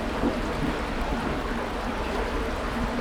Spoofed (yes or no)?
no